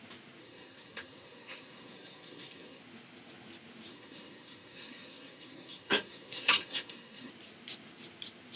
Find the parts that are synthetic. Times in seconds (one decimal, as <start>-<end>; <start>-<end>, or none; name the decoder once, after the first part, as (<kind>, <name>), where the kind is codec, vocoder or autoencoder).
0.4-2.8 (codec, SNAC); 3.9-7.3